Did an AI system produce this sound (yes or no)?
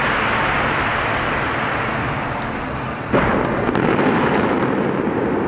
no